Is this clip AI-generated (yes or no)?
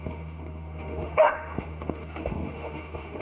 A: yes